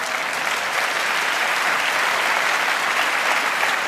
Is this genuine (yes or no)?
yes